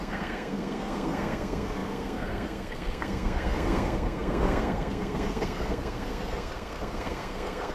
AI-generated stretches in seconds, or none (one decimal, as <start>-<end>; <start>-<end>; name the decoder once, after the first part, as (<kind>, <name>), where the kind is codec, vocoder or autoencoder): 0.0-7.7 (codec, SNAC)